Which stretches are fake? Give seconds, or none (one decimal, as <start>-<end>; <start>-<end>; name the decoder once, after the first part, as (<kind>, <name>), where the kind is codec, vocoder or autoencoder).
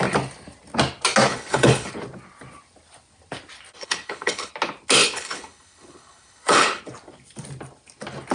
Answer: 1.3-1.9 (codec, HILCodec); 3.8-4.5; 5.0-6.8